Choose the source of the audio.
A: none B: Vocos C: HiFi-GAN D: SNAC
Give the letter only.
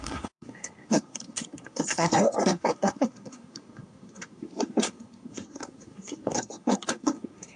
D